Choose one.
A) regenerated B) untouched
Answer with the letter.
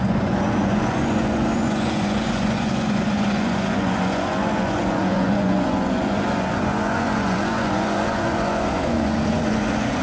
A